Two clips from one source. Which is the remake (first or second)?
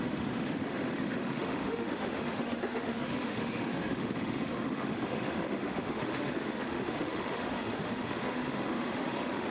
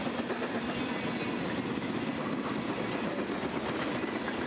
first